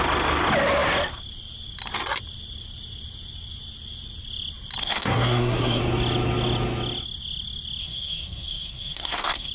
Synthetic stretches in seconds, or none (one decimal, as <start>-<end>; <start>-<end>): 4.8-5.8; 7.8-9.5